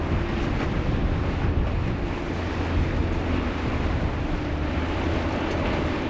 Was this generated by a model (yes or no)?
no